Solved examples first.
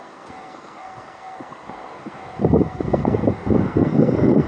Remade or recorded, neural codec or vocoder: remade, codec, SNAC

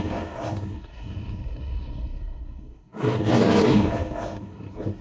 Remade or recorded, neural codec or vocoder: remade, codec, SNAC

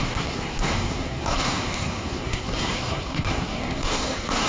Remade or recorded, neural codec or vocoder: remade, codec, SNAC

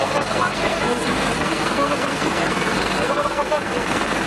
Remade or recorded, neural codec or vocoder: remade, codec, SNAC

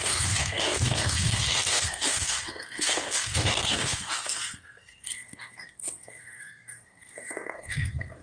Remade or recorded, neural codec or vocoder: remade, codec, SNAC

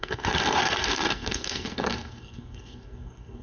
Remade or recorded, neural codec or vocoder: remade, codec, SNAC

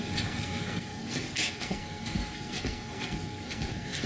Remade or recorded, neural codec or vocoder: remade, codec, SNAC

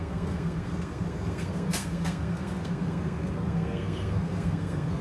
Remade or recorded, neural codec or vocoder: remade, codec, SNAC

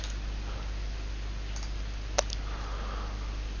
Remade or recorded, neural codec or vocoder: recorded